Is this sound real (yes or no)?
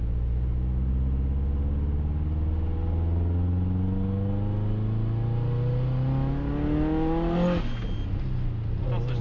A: yes